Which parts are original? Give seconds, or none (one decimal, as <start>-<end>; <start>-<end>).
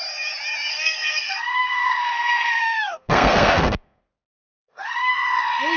0.0-0.7; 4.0-4.4; 5.1-5.8